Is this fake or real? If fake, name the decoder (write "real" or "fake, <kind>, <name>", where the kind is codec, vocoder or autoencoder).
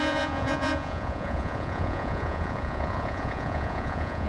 fake, vocoder, Vocos